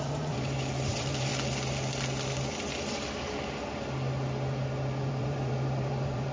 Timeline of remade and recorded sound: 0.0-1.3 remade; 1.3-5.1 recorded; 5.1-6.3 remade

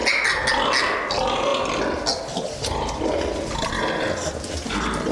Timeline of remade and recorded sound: 0.0-5.1 recorded